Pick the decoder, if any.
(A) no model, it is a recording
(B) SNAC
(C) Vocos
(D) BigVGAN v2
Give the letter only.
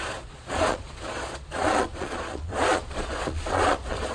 C